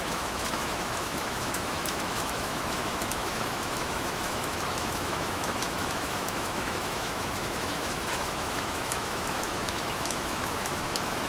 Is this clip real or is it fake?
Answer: fake